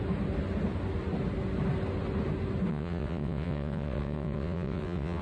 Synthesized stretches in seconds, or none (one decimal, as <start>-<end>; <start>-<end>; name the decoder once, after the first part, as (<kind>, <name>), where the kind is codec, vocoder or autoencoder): 2.7-5.2 (vocoder, WaveNeXt)